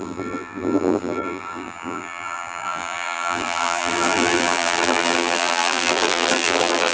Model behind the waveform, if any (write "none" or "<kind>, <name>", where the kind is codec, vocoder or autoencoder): vocoder, BigVGAN v2